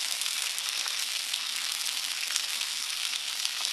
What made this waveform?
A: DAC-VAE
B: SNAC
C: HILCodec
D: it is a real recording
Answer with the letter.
B